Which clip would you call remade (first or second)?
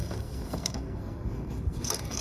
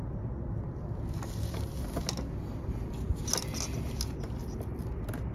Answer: first